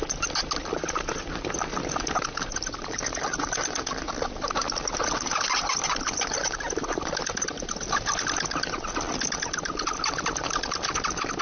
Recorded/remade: recorded